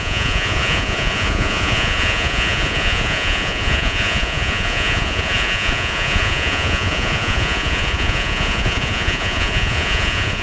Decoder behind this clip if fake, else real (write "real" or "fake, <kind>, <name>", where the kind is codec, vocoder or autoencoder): fake, vocoder, Vocos